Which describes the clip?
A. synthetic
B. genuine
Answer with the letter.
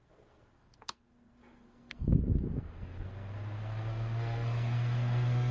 A